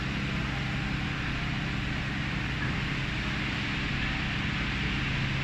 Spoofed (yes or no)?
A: no